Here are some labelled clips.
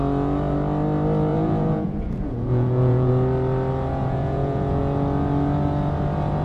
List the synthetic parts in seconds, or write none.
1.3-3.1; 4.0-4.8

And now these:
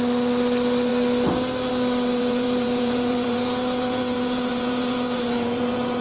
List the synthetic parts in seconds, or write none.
2.2-6.0